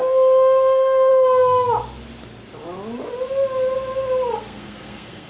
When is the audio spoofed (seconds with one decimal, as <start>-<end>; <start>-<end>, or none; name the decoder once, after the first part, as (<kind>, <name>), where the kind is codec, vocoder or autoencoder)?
0.0-1.1 (codec, SNAC); 4.3-5.3